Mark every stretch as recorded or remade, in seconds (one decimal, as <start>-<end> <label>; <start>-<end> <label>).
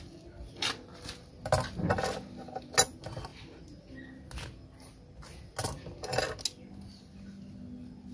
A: 0.0-8.1 recorded